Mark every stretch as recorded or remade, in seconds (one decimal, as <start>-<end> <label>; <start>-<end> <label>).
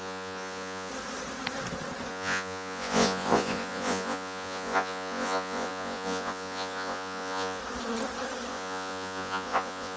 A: 0.0-0.9 remade; 0.9-2.1 recorded; 2.1-7.6 remade; 7.6-8.5 recorded; 8.5-10.0 remade